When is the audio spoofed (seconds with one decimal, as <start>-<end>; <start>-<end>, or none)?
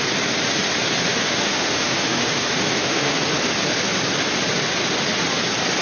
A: 1.1-3.1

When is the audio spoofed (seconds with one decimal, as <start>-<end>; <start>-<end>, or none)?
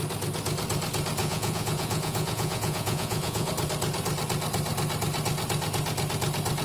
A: 1.2-3.5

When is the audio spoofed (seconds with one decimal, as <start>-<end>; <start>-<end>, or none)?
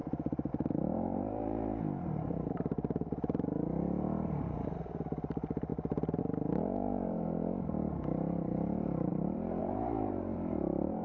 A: 0.5-11.0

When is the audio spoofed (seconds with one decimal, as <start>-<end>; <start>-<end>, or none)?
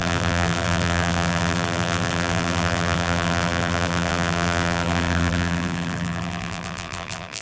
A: 0.0-7.4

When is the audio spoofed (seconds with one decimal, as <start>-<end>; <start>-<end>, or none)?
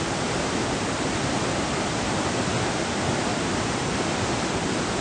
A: 3.3-3.9